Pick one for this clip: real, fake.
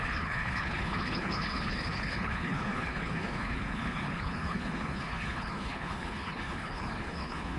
fake